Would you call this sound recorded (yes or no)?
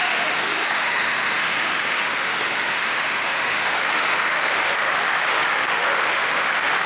no